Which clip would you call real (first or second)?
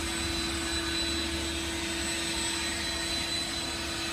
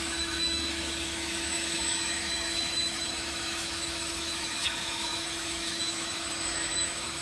first